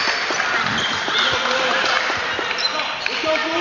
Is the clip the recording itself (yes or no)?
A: yes